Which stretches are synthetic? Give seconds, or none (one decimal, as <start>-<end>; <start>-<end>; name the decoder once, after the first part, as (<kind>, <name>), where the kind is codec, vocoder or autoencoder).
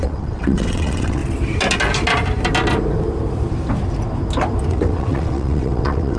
0.0-1.2 (vocoder, WaveNeXt); 4.7-6.2